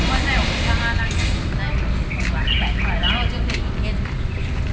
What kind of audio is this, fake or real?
real